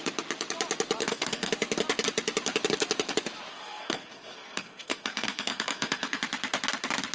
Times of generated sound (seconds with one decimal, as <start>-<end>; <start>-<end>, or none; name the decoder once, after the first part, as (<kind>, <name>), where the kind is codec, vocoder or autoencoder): 1.0-1.5 (codec, SNAC); 3.5-6.2